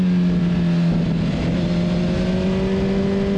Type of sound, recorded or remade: recorded